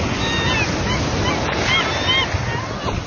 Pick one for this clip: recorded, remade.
recorded